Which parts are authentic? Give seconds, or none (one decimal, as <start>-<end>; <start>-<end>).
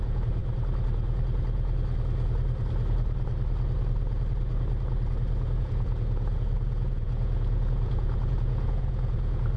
0.4-5.6